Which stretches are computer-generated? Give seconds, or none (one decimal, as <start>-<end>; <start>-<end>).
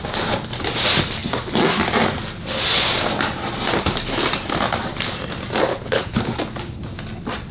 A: 5.7-6.2